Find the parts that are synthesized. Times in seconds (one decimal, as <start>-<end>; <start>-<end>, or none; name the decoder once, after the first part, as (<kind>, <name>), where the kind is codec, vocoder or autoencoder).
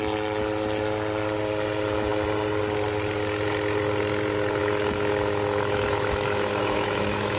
4.6-7.4 (autoencoder, DAC-VAE)